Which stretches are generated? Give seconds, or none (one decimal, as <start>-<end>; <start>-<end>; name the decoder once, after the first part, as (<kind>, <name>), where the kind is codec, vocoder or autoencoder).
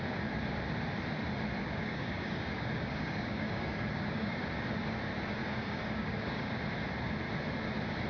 1.6-4.5 (codec, DAC); 5.4-6.5